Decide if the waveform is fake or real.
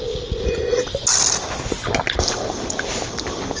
real